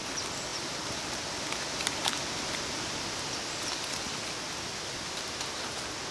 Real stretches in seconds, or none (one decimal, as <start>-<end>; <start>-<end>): 0.0-0.5; 2.2-6.1